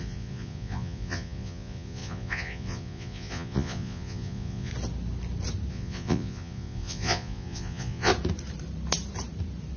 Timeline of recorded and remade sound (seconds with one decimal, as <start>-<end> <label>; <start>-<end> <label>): 0.0-4.7 remade; 4.7-5.7 recorded; 5.7-8.1 remade; 8.1-9.8 recorded